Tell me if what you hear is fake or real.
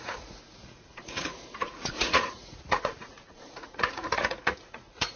fake